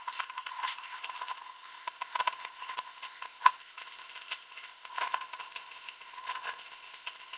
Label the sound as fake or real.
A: fake